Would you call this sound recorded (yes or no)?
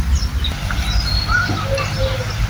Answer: yes